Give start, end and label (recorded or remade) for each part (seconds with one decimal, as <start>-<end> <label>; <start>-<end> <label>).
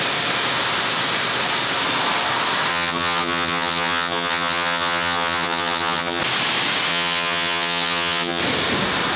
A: 0.0-2.7 recorded; 2.7-6.2 remade; 6.2-6.9 recorded; 6.9-8.4 remade; 8.4-9.2 recorded